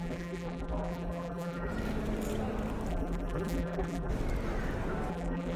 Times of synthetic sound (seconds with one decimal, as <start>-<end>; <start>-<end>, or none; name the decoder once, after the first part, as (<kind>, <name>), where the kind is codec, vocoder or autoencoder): 0.0-1.7 (vocoder, BigVGAN v2); 2.9-4.1; 5.1-5.6